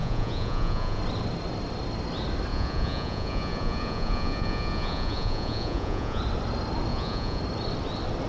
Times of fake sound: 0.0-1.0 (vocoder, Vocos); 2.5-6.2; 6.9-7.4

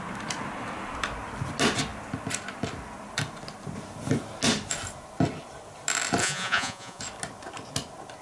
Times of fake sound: 6.2-7.0 (vocoder, Vocos)